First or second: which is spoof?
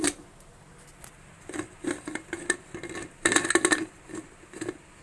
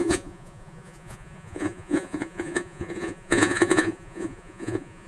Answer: second